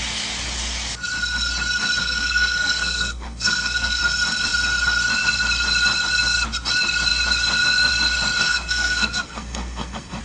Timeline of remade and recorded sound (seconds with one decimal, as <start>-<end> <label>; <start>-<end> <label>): 0.0-2.0 recorded; 2.0-4.0 remade; 4.0-8.4 recorded; 8.4-10.2 remade

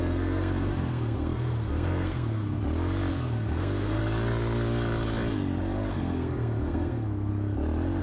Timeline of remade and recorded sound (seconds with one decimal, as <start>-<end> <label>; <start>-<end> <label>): 0.0-2.6 remade; 2.6-3.1 recorded; 3.1-4.0 remade; 4.0-5.9 recorded; 5.9-7.3 remade; 7.3-8.0 recorded

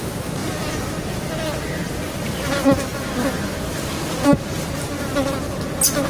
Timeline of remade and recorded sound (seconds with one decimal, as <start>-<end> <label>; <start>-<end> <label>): 0.0-6.1 recorded

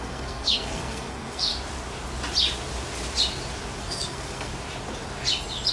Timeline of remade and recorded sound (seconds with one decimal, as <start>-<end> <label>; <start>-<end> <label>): 0.0-1.5 remade; 1.5-3.8 recorded; 3.8-4.5 remade; 4.5-5.7 recorded

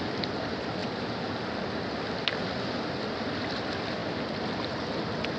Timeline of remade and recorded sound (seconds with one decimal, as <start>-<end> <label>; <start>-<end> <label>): 0.0-5.4 recorded